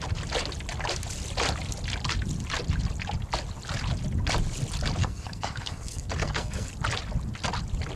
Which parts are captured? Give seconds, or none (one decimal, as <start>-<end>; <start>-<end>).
0.0-5.0; 6.7-8.0